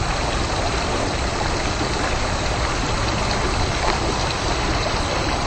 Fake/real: fake